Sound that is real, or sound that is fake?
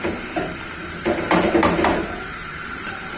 fake